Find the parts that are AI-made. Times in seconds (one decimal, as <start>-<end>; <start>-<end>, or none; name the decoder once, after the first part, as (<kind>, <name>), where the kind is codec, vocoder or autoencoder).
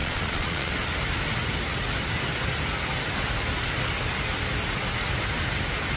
0.0-0.7 (vocoder, Vocos)